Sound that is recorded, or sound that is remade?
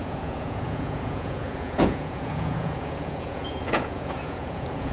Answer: remade